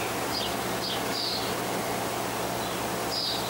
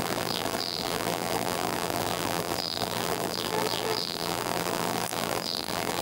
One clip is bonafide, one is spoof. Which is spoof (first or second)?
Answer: second